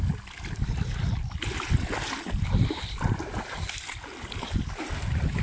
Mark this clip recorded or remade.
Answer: recorded